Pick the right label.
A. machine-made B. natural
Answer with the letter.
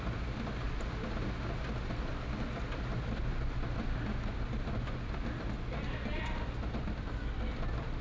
B